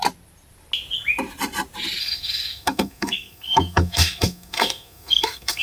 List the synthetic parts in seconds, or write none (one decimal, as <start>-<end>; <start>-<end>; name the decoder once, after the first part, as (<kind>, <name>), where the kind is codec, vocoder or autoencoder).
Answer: 2.0-5.6 (codec, SNAC)